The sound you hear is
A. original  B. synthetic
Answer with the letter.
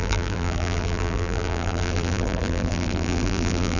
B